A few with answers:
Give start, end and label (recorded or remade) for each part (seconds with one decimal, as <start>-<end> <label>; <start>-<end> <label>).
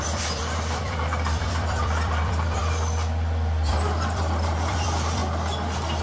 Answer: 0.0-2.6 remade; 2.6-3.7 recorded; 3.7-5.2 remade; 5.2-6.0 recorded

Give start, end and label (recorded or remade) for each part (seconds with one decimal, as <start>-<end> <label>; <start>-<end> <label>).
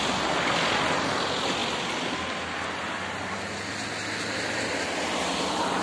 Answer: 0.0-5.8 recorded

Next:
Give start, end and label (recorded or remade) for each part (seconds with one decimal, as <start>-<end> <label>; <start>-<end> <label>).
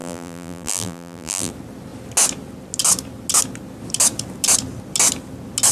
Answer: 0.0-1.5 remade; 1.5-5.7 recorded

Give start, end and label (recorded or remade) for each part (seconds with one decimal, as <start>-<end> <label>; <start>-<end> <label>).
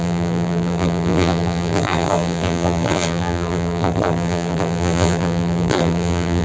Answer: 0.0-6.4 remade